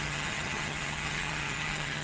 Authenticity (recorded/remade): remade